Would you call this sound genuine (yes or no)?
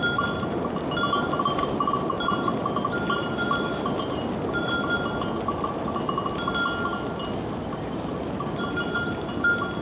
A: yes